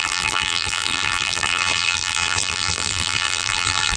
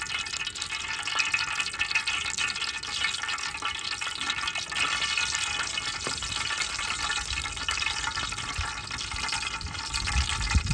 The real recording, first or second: second